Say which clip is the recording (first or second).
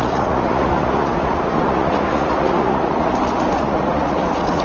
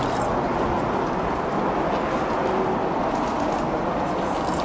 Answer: second